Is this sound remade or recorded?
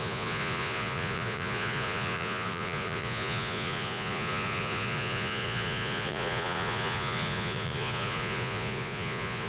remade